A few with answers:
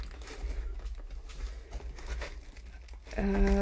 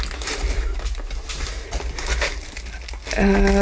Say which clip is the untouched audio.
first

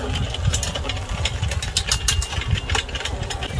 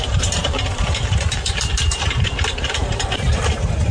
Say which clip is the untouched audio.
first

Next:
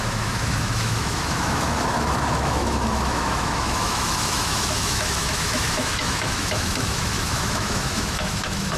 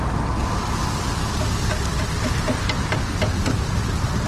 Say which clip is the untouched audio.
second